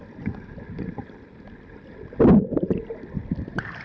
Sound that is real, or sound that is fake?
real